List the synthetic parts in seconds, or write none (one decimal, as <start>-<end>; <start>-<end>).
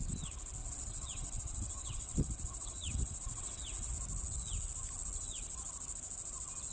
0.6-3.9